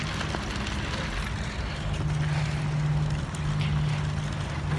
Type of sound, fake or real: real